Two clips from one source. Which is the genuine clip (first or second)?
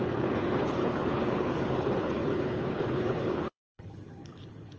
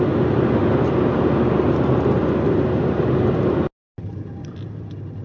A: second